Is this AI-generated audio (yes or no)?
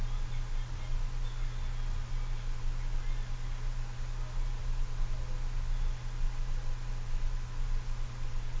no